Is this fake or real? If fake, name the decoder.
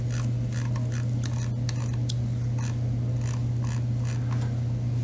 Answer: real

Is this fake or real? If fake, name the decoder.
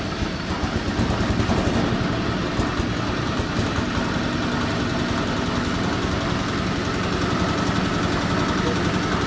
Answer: real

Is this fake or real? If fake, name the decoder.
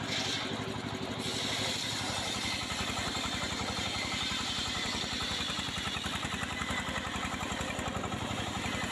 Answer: fake, vocoder, BigVGAN v2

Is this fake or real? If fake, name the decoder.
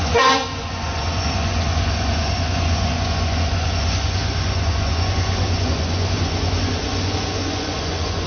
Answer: fake, vocoder, Vocos